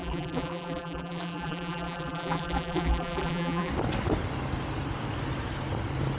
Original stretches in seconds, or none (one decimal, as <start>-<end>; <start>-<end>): 3.7-6.2